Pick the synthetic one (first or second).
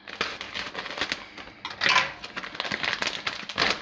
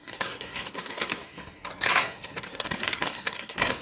second